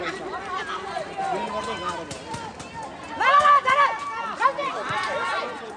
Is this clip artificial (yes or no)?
no